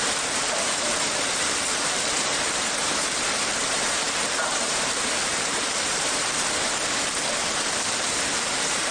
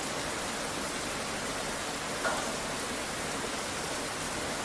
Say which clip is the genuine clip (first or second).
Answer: second